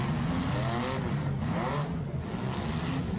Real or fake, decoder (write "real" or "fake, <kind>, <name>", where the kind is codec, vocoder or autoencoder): real